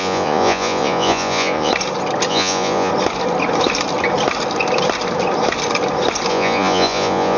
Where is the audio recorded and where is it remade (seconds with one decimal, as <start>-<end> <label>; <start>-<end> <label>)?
0.0-1.7 remade; 1.7-2.3 recorded; 2.3-2.9 remade; 2.9-6.3 recorded; 6.3-7.4 remade